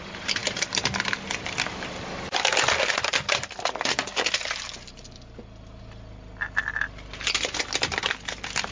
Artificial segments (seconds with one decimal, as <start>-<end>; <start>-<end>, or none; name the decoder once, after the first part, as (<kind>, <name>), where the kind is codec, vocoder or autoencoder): none

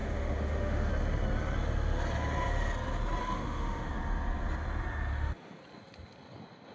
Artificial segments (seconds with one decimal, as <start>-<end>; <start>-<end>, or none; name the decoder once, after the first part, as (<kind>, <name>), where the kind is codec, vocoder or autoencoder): 0.0-0.9 (autoencoder, DAC-VAE); 3.2-3.9; 5.1-5.6